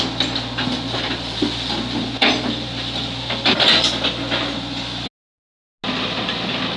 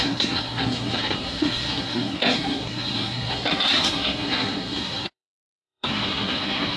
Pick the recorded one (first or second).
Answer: first